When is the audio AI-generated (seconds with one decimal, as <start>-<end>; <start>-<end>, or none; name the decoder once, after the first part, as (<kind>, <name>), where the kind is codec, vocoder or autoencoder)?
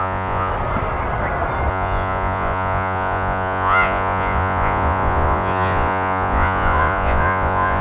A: 0.0-0.5 (vocoder, Vocos); 1.7-7.8